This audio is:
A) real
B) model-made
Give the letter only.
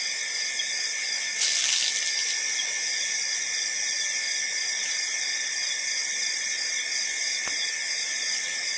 A